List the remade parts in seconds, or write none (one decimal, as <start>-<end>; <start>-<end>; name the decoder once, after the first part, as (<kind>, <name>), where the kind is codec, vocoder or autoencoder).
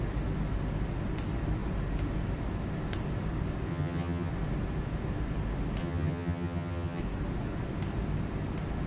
3.7-4.3 (vocoder, HiFi-GAN); 5.8-7.0